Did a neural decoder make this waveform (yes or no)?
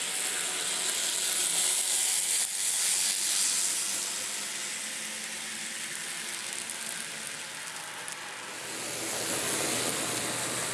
no